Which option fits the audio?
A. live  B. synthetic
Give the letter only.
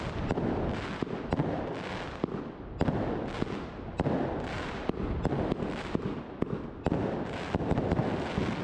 A